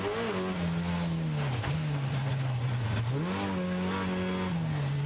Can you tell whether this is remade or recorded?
recorded